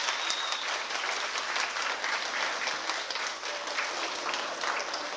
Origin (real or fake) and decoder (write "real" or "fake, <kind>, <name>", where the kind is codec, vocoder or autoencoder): real